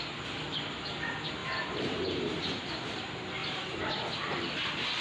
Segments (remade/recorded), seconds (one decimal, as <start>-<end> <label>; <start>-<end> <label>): 0.0-1.4 recorded; 1.4-2.4 remade; 2.4-3.4 recorded; 3.4-4.0 remade; 4.0-5.0 recorded